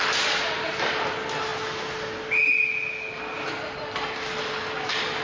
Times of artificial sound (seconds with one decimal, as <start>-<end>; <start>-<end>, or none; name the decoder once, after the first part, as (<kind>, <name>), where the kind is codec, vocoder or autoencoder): none